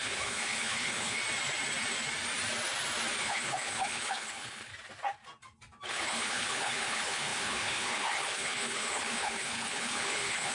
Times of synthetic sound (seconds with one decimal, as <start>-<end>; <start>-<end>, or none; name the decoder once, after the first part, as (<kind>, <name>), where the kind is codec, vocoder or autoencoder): 0.0-1.2 (codec, HILCodec); 3.2-4.7; 5.9-10.5